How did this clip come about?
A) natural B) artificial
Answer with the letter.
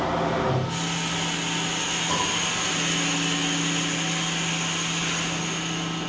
A